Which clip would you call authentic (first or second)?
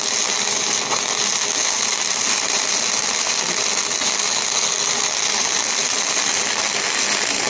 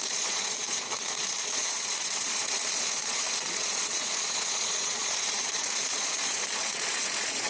first